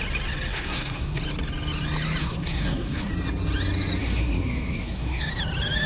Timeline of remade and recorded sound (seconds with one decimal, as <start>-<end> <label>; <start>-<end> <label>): 0.0-0.5 recorded; 0.5-1.2 remade; 1.2-2.2 recorded; 2.2-3.1 remade; 3.1-4.0 recorded; 4.0-5.3 remade; 5.3-5.9 recorded